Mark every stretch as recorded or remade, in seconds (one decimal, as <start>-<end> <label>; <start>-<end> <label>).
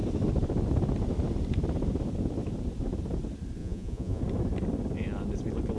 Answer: 0.0-3.6 recorded; 3.6-4.2 remade; 4.2-5.8 recorded